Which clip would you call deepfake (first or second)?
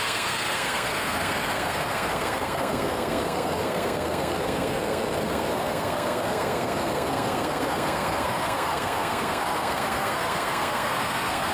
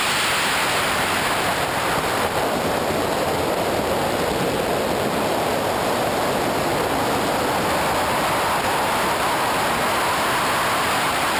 first